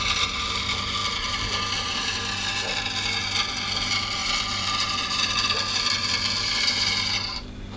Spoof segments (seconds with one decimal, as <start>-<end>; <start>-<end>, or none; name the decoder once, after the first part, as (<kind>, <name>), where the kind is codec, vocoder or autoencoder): 4.2-5.6 (vocoder, BigVGAN v2)